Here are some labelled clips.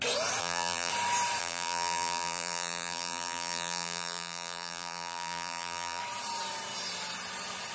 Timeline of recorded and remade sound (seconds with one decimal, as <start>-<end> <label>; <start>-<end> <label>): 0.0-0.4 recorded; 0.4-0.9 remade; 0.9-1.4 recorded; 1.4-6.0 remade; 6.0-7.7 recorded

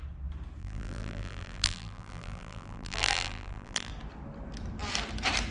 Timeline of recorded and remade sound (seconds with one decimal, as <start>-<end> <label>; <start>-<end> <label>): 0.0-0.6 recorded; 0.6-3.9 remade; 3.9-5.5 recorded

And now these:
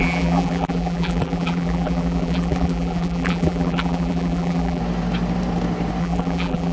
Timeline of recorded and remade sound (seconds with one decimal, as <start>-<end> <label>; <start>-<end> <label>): 0.0-4.8 remade; 4.8-6.0 recorded; 6.0-6.7 remade

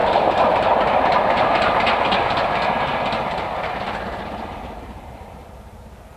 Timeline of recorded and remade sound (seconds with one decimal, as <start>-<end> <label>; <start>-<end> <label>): 0.0-6.2 recorded